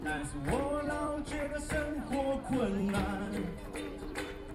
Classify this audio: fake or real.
fake